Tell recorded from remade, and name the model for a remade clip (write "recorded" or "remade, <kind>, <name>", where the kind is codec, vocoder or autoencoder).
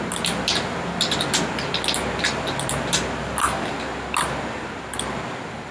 recorded